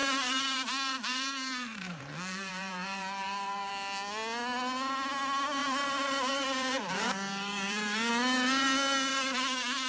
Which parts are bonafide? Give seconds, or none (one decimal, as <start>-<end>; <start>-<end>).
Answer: 3.7-5.6; 8.1-9.1